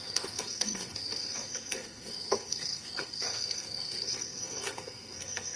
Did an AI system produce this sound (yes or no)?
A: yes